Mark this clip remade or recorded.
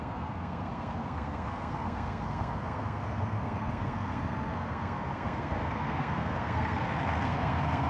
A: remade